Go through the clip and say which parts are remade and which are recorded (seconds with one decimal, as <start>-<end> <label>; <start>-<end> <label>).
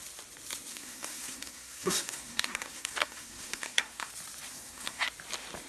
0.0-0.7 recorded; 0.7-4.1 remade; 4.1-4.5 recorded; 4.5-5.1 remade; 5.1-5.7 recorded